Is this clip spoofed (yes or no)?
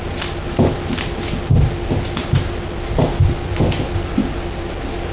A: no